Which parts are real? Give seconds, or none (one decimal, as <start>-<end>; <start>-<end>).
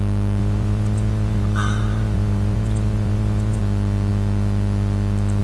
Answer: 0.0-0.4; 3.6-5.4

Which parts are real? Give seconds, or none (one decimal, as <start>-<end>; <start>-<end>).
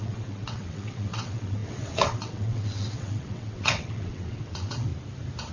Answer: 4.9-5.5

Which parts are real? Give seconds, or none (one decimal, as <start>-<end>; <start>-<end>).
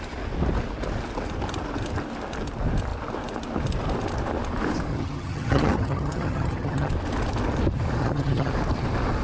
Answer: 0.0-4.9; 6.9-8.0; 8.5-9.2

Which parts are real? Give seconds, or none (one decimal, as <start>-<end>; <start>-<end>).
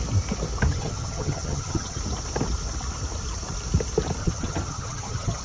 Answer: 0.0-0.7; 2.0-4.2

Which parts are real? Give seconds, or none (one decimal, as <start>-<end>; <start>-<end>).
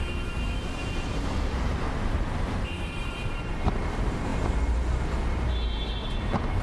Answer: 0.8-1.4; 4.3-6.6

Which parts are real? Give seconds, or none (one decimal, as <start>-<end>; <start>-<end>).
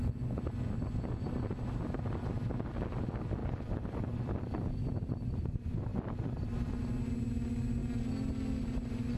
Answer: 0.0-3.4; 4.6-5.9; 6.8-9.2